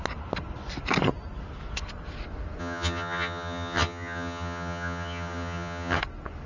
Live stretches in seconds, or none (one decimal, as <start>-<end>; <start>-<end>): 0.0-2.6; 6.0-6.5